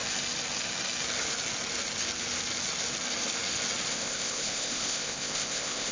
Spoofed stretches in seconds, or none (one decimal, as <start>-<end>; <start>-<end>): 3.9-5.9